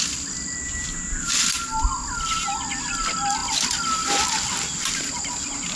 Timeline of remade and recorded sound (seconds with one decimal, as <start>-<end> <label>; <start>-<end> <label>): 0.0-5.8 recorded